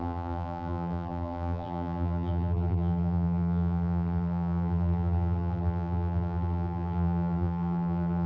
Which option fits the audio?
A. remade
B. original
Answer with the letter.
A